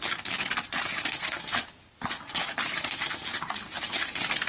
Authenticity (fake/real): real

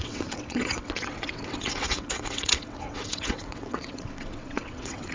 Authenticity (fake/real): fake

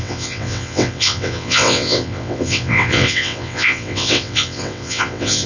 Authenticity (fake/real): fake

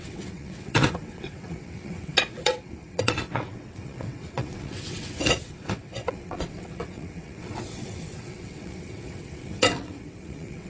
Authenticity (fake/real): fake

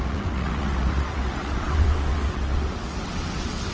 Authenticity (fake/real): fake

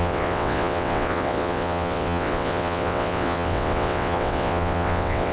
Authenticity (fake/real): fake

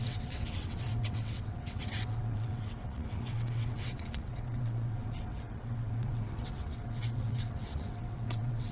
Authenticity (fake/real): fake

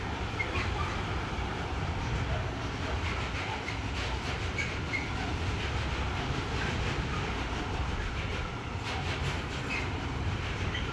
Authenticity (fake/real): real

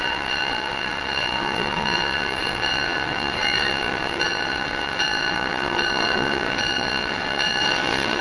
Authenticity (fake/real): fake